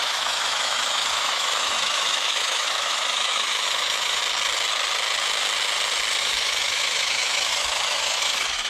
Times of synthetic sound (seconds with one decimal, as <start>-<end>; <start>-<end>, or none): 0.0-4.2; 6.2-8.7